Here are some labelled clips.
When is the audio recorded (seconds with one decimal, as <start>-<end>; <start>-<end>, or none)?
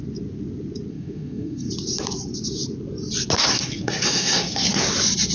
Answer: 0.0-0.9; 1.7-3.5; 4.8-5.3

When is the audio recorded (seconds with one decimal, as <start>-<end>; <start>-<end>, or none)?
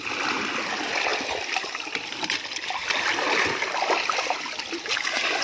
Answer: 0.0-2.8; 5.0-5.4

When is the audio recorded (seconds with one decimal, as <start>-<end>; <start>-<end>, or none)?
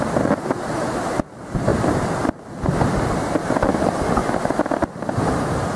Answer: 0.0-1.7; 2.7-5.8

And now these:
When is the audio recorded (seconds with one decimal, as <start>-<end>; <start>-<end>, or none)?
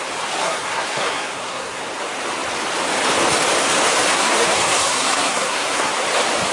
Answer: 0.0-0.4; 1.8-4.1; 5.9-6.5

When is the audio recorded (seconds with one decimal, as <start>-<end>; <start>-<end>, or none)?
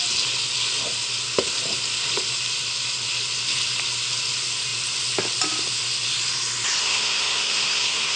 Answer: 0.0-6.8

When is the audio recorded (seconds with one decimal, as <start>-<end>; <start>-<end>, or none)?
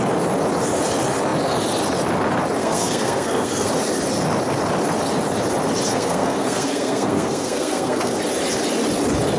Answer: 0.0-2.6; 3.7-5.9; 8.2-9.4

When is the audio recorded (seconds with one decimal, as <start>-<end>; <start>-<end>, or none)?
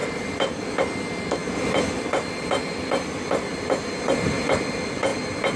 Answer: 0.6-1.4; 4.6-5.1